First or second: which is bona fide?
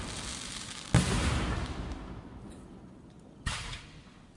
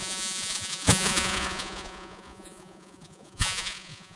first